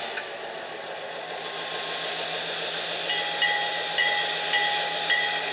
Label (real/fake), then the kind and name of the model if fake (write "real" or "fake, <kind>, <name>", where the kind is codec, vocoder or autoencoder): real